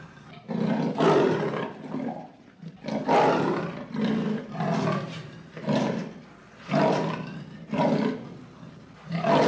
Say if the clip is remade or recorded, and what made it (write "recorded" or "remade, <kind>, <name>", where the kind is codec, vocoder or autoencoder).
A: recorded